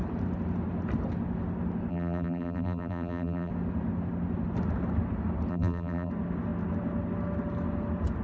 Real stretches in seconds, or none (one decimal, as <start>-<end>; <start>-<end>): 0.0-1.9; 3.5-5.5; 6.1-8.2